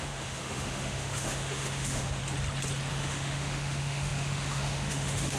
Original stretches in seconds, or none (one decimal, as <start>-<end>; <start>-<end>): 2.2-2.9